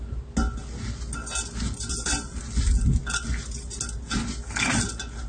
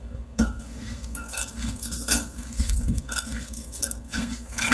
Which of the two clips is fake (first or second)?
second